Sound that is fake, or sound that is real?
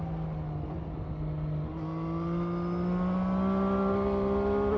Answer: real